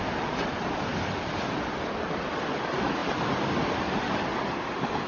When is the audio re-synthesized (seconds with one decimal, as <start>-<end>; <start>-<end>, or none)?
none